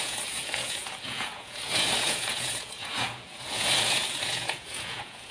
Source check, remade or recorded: remade